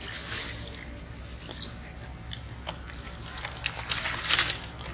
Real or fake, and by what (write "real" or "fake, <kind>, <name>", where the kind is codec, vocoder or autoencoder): real